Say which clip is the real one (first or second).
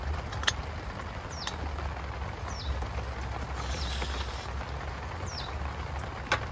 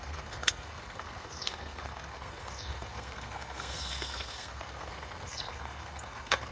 first